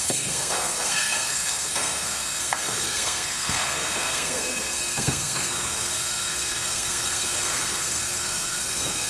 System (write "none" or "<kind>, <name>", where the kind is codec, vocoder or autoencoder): codec, SNAC